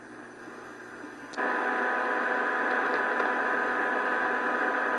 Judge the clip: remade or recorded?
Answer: recorded